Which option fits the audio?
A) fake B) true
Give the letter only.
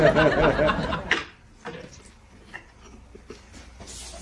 B